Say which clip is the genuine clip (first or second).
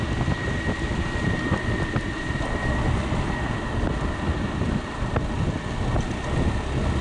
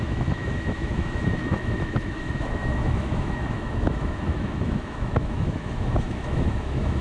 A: first